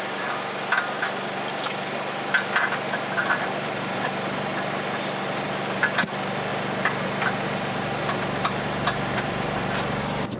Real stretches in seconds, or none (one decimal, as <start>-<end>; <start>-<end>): 0.0-3.2; 4.1-6.5; 10.0-10.4